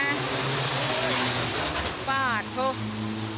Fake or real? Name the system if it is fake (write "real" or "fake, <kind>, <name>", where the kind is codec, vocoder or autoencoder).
real